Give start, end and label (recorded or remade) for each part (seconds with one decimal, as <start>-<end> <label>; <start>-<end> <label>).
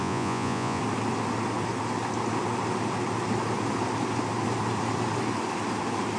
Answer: 0.0-0.8 remade; 0.8-6.2 recorded